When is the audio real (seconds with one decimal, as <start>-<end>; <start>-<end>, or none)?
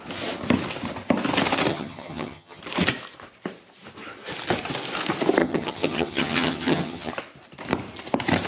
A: 0.0-1.7; 2.6-5.4; 7.1-8.5